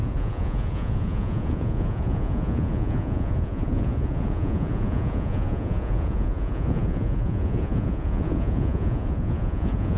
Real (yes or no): no